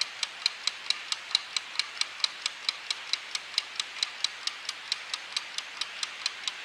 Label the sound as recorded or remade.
recorded